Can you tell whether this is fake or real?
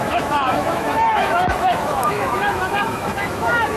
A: fake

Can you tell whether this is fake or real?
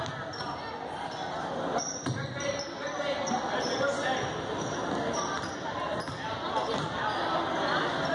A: real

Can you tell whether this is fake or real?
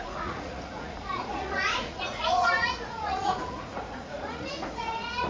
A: fake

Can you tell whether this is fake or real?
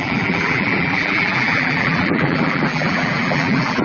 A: fake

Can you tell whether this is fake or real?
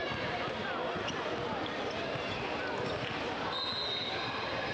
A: real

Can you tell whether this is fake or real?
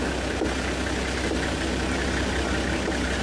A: real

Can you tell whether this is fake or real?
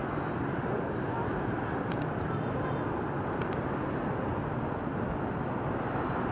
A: real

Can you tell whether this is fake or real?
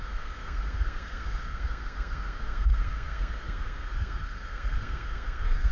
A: fake